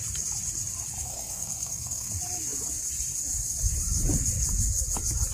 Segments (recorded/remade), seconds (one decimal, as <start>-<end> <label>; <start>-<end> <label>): 0.0-1.0 recorded; 1.0-2.1 remade; 2.1-5.3 recorded